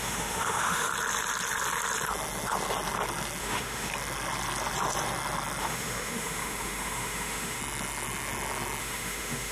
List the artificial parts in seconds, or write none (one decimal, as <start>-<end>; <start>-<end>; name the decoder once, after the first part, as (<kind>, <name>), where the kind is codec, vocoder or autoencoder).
0.0-0.9 (autoencoder, DAC-VAE); 3.4-3.9; 5.6-7.6; 8.8-9.5